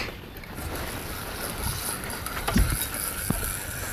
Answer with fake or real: real